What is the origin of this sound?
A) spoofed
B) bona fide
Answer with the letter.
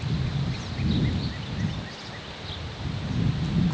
B